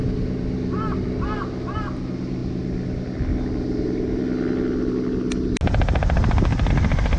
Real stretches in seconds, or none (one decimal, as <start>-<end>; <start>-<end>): 0.0-7.2